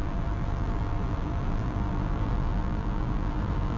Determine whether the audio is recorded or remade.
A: remade